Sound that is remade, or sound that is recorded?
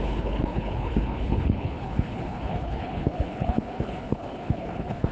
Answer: remade